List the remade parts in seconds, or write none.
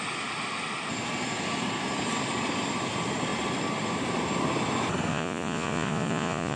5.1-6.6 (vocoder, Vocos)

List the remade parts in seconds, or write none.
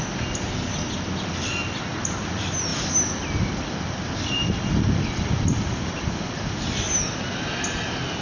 none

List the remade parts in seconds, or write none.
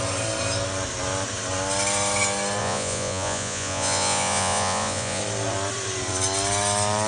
2.6-5.2 (vocoder, Vocos)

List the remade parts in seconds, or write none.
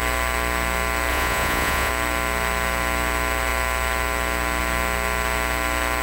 1.1-1.9 (vocoder, Vocos)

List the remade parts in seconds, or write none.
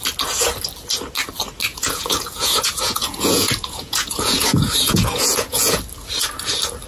1.7-5.8 (vocoder, Vocos)